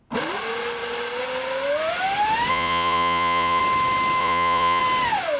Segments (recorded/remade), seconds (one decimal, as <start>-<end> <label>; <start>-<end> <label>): 0.0-2.5 recorded; 2.5-3.6 remade; 3.6-4.2 recorded; 4.2-4.8 remade; 4.8-5.4 recorded